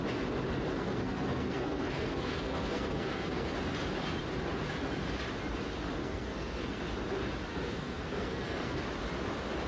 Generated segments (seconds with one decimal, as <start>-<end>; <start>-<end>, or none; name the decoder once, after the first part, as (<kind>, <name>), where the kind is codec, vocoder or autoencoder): 0.7-3.5 (codec, SNAC); 6.0-6.8; 7.5-8.8